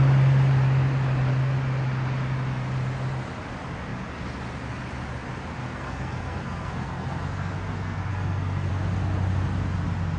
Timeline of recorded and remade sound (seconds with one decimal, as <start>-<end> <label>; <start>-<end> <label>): 0.0-5.6 recorded; 5.6-8.7 remade; 8.7-10.2 recorded